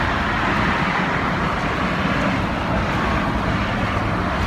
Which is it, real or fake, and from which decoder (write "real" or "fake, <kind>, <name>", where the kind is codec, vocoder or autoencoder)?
real